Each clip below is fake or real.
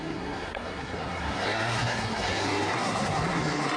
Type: fake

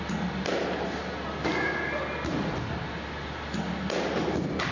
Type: real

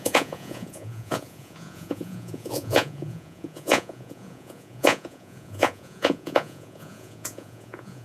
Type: fake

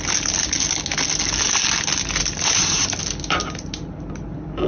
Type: real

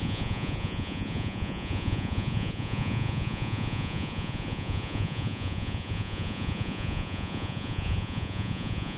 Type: fake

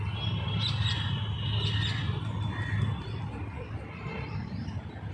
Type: real